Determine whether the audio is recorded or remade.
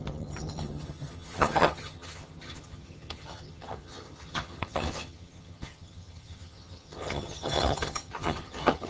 remade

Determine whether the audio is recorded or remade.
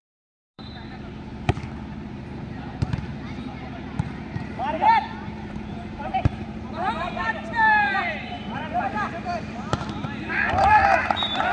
remade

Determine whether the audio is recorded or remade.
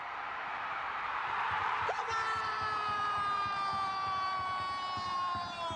remade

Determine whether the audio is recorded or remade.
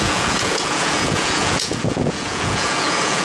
remade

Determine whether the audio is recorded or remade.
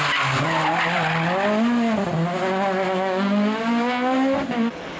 recorded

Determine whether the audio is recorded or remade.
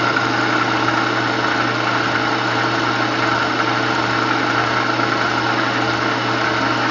recorded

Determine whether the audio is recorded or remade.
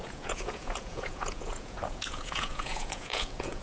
remade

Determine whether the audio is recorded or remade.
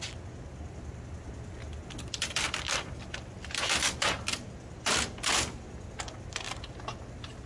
recorded